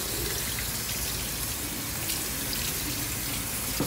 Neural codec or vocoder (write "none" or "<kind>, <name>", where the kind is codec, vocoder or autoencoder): none